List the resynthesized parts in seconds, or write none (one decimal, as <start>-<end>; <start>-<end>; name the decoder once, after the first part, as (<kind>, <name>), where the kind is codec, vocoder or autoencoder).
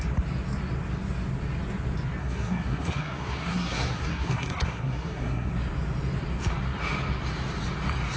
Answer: 2.2-5.5 (codec, SNAC)